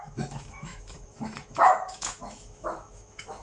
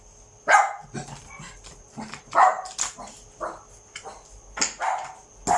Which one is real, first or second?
second